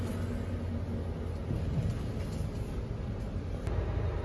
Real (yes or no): yes